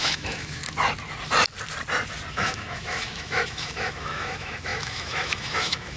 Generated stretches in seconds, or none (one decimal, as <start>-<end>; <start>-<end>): 0.0-0.6; 2.3-6.0